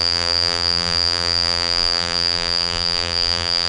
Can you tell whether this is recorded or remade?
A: remade